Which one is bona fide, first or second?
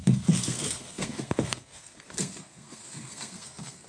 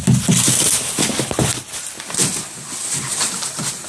second